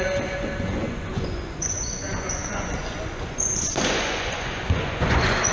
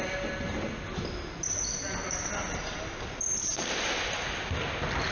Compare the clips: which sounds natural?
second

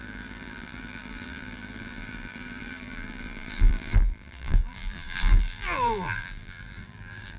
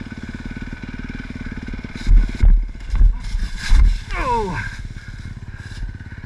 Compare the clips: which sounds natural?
second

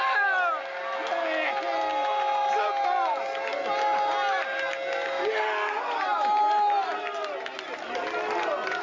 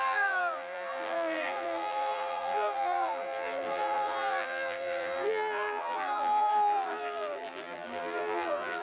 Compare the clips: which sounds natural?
first